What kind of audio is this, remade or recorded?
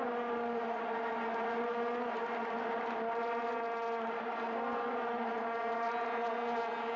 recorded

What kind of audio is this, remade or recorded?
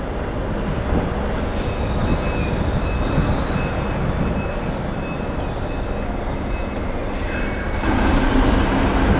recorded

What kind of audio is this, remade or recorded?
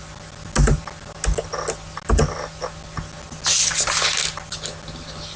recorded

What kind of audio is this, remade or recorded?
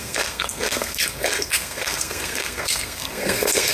remade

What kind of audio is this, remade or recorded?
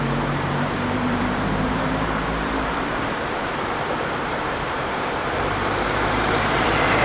remade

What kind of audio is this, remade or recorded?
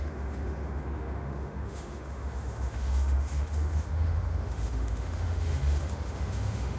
remade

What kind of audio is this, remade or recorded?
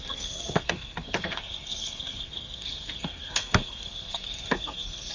remade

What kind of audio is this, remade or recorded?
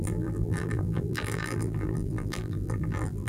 remade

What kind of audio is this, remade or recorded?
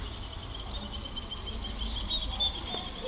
recorded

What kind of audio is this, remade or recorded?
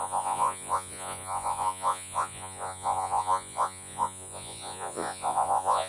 remade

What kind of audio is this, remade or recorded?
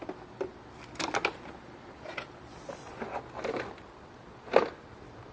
recorded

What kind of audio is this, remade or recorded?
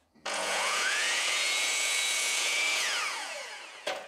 remade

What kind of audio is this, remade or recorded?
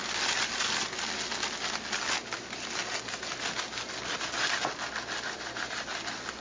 recorded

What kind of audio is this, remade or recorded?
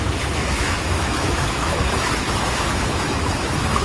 remade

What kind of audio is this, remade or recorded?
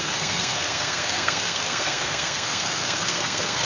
remade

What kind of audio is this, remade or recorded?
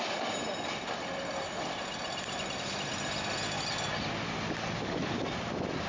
recorded